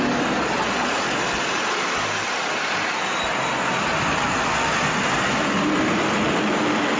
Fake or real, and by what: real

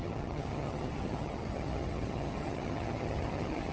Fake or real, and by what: fake, vocoder, HiFi-GAN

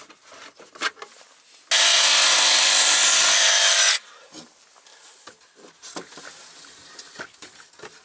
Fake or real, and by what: real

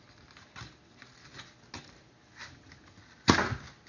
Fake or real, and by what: real